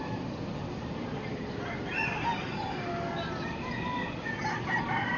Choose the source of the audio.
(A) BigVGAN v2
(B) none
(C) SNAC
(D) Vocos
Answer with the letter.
A